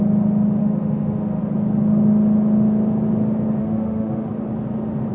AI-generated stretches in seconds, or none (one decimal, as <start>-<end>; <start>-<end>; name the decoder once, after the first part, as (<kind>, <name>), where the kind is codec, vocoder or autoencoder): 0.6-1.4 (autoencoder, DAC-VAE); 3.6-4.3